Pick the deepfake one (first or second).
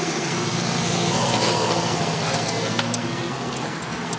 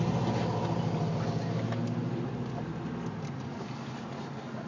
first